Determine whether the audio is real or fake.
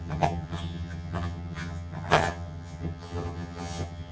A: fake